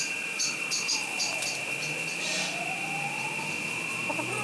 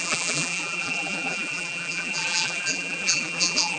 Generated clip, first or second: second